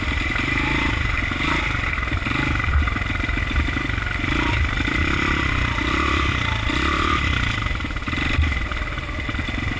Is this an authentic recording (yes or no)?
no